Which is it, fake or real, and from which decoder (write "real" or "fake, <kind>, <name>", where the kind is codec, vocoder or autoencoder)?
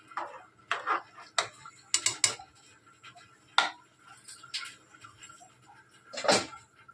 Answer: real